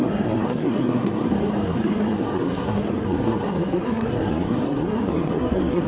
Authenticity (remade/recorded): remade